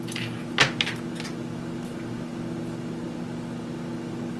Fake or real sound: real